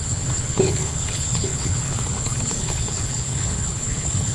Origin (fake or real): fake